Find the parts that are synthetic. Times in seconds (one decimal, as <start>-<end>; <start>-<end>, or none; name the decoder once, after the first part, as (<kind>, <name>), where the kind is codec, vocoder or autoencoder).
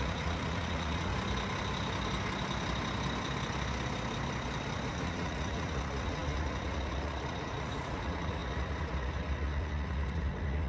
0.0-1.1 (vocoder, Vocos); 4.9-10.7